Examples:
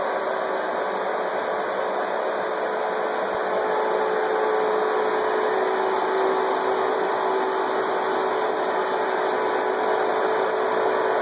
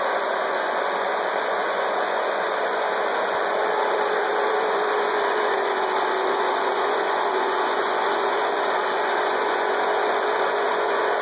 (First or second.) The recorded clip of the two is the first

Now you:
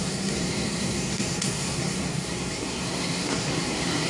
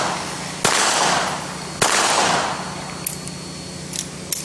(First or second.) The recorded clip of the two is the second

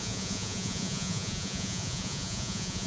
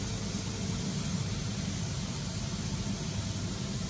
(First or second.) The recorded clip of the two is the second